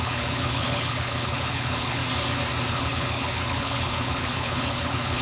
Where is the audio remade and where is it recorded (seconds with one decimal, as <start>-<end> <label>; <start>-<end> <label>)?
0.0-2.0 remade; 2.0-2.7 recorded; 2.7-5.2 remade